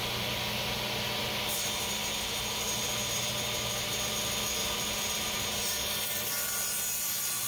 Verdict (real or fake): real